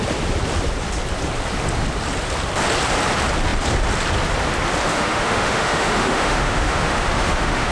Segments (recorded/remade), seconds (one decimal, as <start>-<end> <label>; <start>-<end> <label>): 0.0-4.9 recorded; 4.9-7.7 remade